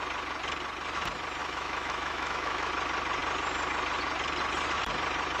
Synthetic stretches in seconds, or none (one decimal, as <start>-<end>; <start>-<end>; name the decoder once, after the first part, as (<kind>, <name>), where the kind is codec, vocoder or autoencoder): 1.4-2.7 (autoencoder, DAC-VAE)